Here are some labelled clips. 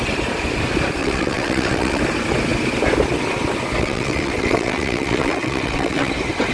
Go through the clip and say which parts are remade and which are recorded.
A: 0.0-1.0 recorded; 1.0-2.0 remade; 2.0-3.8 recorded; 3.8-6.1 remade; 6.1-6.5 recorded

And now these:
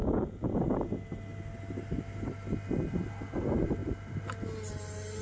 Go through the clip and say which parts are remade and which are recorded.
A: 0.0-5.2 recorded

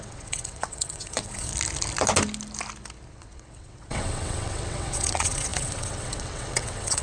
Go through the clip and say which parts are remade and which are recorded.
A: 0.0-1.5 remade; 1.5-3.1 recorded; 3.1-7.0 remade

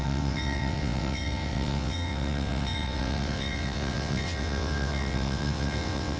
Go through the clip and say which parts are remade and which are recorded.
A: 0.0-6.2 remade

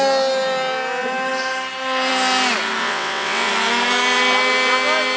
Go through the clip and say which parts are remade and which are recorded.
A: 0.0-2.8 recorded; 2.8-3.5 remade; 3.5-5.2 recorded